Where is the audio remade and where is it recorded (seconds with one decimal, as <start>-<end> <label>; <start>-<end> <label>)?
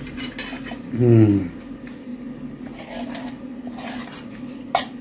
0.0-5.0 recorded